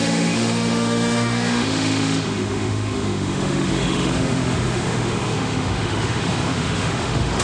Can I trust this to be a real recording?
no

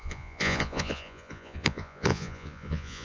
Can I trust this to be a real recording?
no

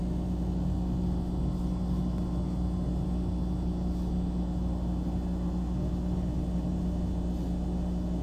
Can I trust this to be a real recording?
yes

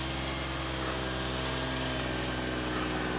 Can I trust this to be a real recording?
yes